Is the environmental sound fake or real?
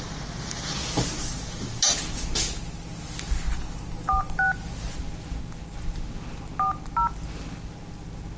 real